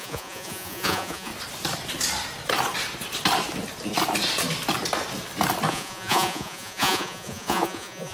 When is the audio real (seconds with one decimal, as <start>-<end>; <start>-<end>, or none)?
1.3-5.7